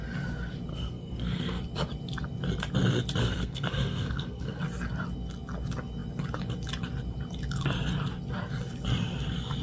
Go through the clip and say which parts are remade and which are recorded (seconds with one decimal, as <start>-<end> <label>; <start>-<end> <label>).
0.0-0.7 recorded; 0.7-1.6 remade; 1.6-3.2 recorded; 3.2-4.6 remade; 4.6-9.6 recorded